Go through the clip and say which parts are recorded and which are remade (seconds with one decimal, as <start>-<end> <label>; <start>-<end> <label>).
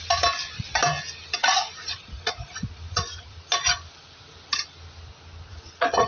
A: 0.0-1.4 recorded; 1.4-3.5 remade; 3.5-5.5 recorded; 5.5-6.1 remade